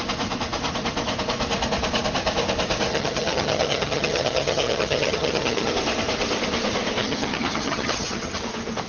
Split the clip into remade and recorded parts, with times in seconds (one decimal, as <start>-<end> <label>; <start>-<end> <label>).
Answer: 0.0-2.9 recorded; 2.9-5.7 remade; 5.7-7.0 recorded; 7.0-8.4 remade; 8.4-8.9 recorded